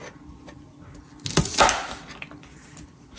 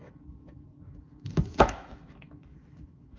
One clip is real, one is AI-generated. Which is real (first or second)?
first